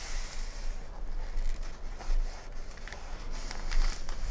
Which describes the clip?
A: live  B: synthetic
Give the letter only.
A